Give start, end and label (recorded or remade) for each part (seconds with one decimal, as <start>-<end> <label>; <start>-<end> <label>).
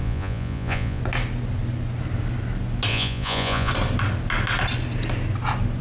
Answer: 0.0-1.0 remade; 1.0-2.9 recorded; 2.9-3.7 remade; 3.7-5.8 recorded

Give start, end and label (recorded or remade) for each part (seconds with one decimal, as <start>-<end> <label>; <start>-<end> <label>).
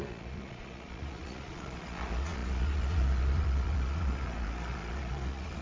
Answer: 0.0-5.6 remade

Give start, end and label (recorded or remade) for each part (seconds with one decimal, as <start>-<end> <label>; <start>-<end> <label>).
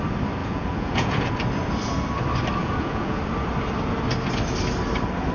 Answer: 0.0-0.4 recorded; 0.4-1.3 remade; 1.3-2.6 recorded; 2.6-3.2 remade; 3.2-5.3 recorded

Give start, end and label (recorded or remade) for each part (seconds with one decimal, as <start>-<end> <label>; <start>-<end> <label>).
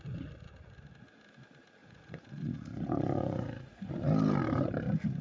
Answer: 0.0-1.8 recorded; 1.8-3.9 remade; 3.9-5.2 recorded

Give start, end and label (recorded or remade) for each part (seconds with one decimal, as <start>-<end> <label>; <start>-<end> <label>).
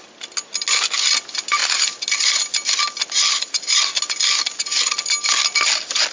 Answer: 0.0-6.1 recorded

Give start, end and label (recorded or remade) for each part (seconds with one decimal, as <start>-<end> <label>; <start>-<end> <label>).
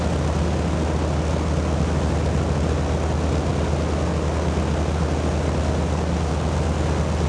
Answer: 0.0-7.3 recorded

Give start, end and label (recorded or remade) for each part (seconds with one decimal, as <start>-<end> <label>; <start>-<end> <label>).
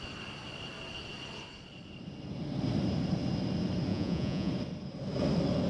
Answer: 0.0-3.9 recorded; 3.9-4.5 remade; 4.5-5.7 recorded